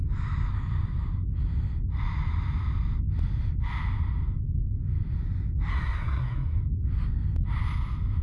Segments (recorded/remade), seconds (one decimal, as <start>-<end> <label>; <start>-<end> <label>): 0.0-5.7 recorded; 5.7-6.6 remade; 6.6-8.2 recorded